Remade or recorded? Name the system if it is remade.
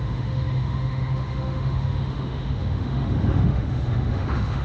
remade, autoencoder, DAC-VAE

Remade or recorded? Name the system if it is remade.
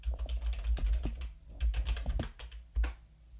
recorded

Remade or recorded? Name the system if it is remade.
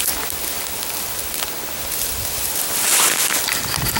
recorded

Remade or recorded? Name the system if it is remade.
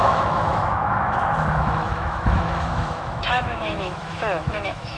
remade, autoencoder, DAC-VAE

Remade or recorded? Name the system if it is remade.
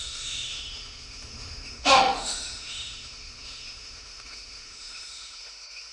remade, autoencoder, DAC-VAE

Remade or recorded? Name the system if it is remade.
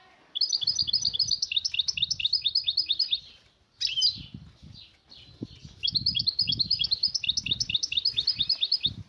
recorded